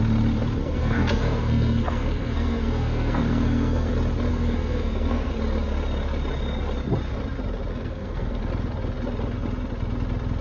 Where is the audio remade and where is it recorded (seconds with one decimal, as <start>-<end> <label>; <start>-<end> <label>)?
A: 0.0-0.6 recorded; 0.6-3.9 remade; 3.9-4.3 recorded; 4.3-5.3 remade; 5.3-7.7 recorded; 7.7-8.4 remade; 8.4-10.4 recorded